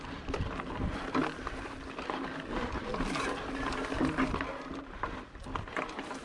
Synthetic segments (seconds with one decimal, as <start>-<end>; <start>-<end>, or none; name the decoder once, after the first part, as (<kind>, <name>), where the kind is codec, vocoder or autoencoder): none